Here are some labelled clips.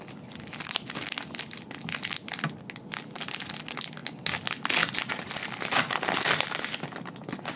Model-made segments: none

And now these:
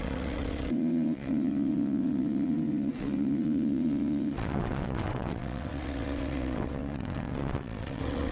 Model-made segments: 0.0-8.3